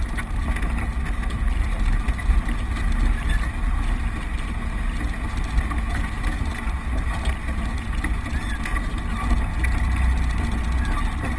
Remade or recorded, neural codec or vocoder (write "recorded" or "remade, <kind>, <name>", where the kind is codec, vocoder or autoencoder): recorded